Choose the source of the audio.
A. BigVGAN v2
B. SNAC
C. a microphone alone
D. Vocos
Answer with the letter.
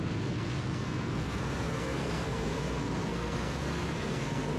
B